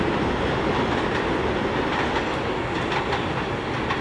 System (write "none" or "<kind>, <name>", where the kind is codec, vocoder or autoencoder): none